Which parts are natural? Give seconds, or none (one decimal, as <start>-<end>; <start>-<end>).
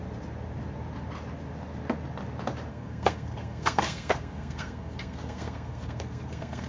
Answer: 0.0-2.7